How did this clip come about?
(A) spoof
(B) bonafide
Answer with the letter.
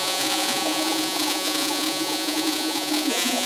A